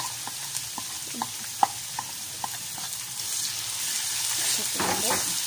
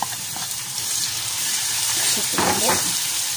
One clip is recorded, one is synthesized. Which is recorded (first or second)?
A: first